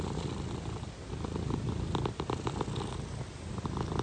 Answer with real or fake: real